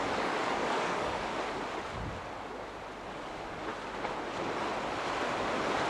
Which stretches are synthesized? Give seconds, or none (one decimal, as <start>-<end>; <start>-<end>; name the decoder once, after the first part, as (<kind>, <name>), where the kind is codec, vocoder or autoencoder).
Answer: 0.0-1.3 (codec, DAC); 3.1-3.7